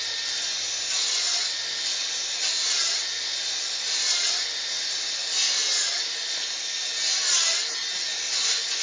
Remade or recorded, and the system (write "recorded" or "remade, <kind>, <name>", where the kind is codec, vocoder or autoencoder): recorded